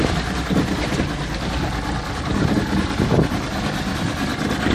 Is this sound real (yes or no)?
yes